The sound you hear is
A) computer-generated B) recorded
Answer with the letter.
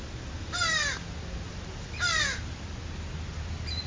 B